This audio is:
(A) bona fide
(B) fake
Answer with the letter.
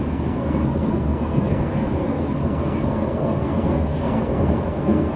B